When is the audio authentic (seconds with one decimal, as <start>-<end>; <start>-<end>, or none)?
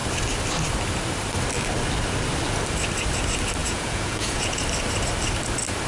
0.0-3.6; 4.6-5.9